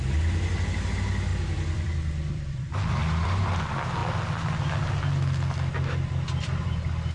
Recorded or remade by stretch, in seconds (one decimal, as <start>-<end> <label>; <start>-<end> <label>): 0.0-1.3 recorded; 1.3-3.6 remade; 3.6-7.1 recorded